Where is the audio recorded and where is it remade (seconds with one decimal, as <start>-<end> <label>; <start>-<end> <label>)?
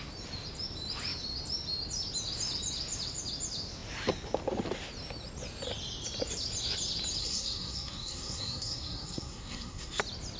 0.0-7.2 recorded; 7.2-10.0 remade; 10.0-10.4 recorded